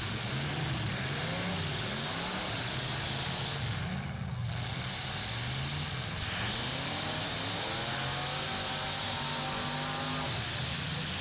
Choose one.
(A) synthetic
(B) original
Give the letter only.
B